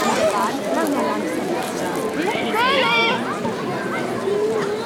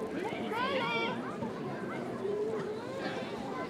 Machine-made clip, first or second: second